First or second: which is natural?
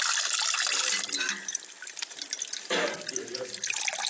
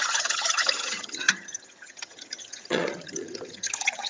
first